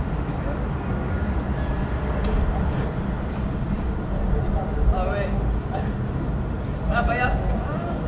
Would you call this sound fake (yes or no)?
no